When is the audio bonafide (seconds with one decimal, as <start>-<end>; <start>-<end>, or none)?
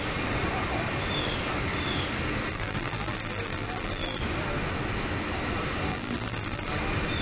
0.0-2.5; 4.2-5.9; 6.7-7.2